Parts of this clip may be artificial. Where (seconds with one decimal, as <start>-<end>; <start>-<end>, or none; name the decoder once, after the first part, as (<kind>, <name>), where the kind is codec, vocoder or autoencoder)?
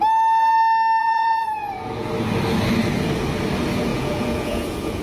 1.0-2.1 (vocoder, Vocos); 3.9-5.0